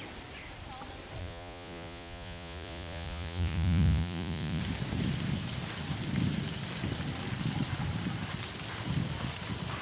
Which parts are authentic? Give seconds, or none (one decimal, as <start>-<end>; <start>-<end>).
0.0-1.2; 4.6-9.8